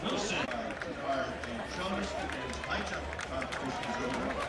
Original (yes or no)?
no